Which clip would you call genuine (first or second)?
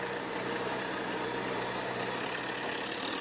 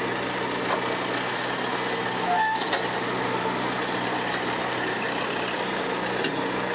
second